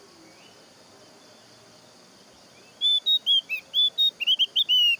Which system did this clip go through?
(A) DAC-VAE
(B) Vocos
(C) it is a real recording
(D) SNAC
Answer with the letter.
C